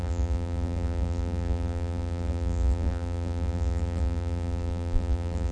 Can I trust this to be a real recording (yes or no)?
no